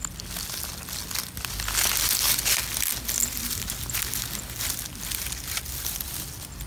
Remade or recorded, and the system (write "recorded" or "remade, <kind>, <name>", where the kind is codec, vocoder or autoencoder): recorded